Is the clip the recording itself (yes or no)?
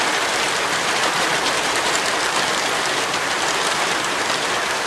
no